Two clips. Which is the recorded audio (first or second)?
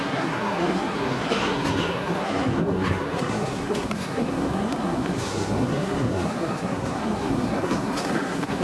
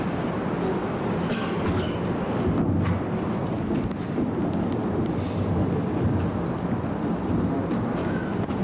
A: second